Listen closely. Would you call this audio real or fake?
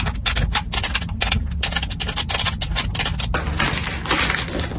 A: real